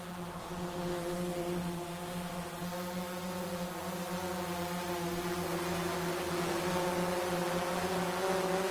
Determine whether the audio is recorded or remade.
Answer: recorded